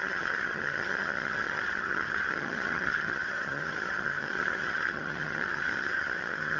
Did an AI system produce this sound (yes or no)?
yes